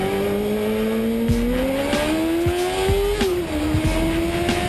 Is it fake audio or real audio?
real